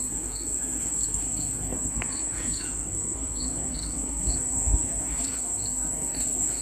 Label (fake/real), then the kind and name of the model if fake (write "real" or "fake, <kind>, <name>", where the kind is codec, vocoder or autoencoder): fake, codec, SNAC